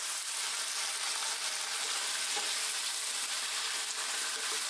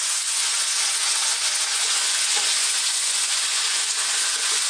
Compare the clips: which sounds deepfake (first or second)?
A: second